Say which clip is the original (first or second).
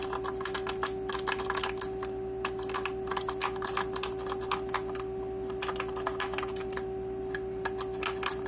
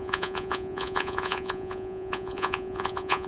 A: first